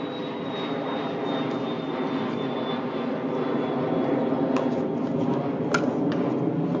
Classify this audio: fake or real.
real